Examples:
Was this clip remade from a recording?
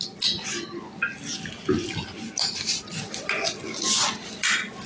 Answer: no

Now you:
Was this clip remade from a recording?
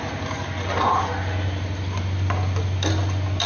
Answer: no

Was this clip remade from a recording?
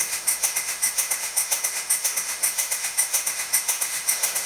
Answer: yes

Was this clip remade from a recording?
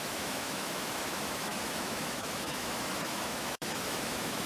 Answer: yes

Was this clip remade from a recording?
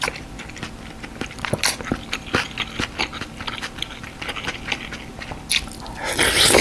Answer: no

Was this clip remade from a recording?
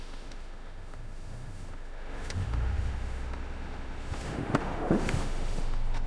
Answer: yes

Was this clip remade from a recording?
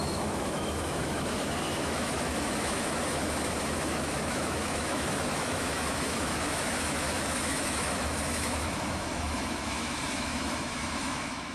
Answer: yes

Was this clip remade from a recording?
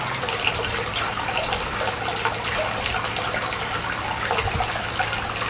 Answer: no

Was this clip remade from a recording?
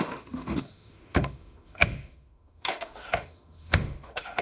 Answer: yes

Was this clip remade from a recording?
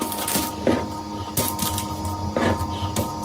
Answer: no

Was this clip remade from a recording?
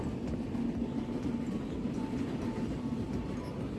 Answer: no